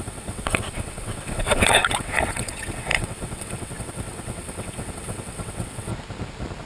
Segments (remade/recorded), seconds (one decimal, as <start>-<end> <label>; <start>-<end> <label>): 0.0-5.9 remade; 5.9-6.7 recorded